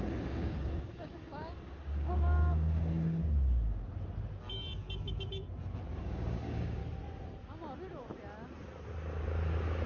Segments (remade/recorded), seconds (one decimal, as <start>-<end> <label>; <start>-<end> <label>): 0.0-3.2 remade; 3.2-6.0 recorded; 6.0-6.8 remade; 6.8-9.9 recorded